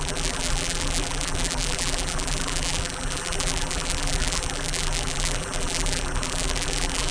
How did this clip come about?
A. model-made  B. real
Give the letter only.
A